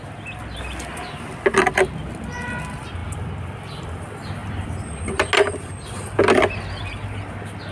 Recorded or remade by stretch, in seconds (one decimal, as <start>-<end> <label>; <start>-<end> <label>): 0.0-3.0 recorded; 3.0-4.0 remade; 4.0-4.4 recorded; 4.4-5.3 remade; 5.3-7.7 recorded